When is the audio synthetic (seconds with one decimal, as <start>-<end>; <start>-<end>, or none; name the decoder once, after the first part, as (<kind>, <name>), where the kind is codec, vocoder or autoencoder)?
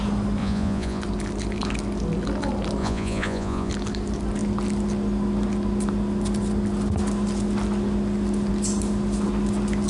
0.4-1.0 (vocoder, Vocos); 2.8-3.7